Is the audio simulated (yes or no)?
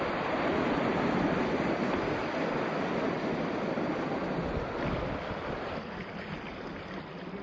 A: no